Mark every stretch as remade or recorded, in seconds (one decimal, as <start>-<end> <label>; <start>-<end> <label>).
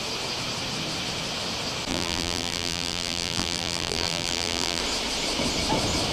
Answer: 0.0-1.9 recorded; 1.9-4.8 remade; 4.8-6.1 recorded